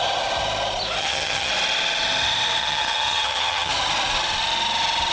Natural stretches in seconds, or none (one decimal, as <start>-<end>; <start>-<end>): 0.0-1.0; 1.5-2.6; 3.7-5.1